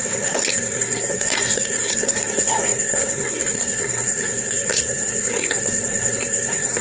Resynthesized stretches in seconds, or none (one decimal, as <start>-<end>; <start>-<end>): 0.0-6.8